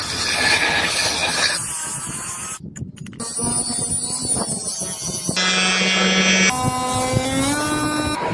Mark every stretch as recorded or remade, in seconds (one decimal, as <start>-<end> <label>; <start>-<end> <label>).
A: 0.0-8.3 recorded